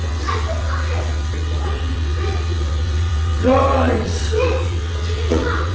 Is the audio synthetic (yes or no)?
yes